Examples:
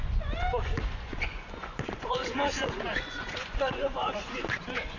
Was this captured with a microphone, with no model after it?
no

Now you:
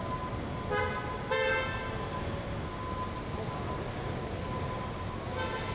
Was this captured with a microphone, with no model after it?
yes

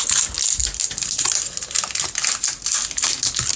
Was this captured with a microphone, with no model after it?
yes